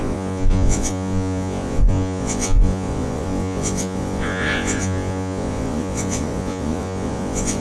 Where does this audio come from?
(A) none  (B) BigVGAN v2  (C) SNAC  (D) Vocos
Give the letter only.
D